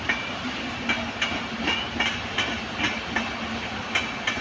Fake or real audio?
real